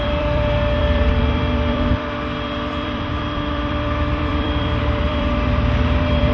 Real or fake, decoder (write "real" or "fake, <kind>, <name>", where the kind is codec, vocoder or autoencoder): fake, vocoder, BigVGAN v2